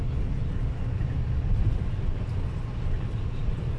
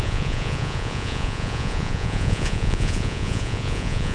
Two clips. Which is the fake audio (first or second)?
second